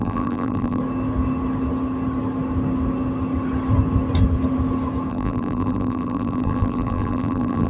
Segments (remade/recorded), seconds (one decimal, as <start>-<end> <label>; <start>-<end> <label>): 0.0-0.8 remade; 0.8-5.1 recorded; 5.1-7.7 remade